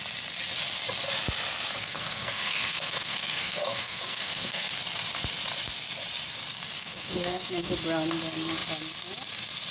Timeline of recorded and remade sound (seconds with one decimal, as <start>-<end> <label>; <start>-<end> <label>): 0.0-1.8 recorded; 1.8-4.7 remade; 4.7-6.8 recorded; 6.8-7.7 remade; 7.7-9.7 recorded